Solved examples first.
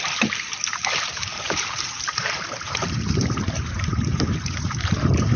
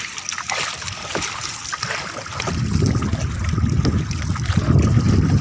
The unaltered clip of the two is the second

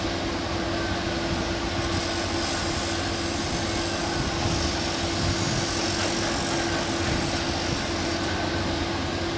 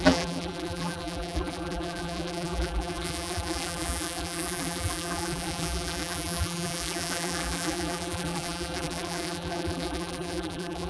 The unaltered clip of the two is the first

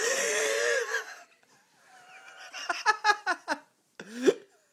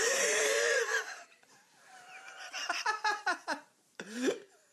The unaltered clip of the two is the first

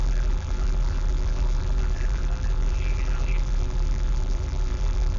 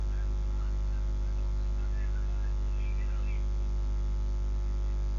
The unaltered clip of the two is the second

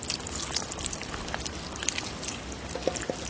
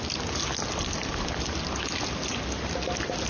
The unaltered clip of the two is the second